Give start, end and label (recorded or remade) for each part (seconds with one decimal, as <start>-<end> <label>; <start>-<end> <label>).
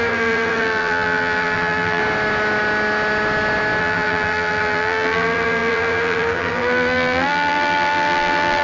0.0-2.0 remade; 2.0-3.8 recorded; 3.8-8.6 remade